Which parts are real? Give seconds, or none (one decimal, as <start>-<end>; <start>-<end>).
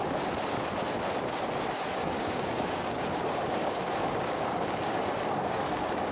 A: 0.0-2.0